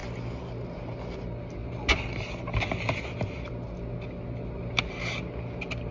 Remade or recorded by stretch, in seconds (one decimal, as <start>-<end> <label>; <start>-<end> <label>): 0.0-5.9 recorded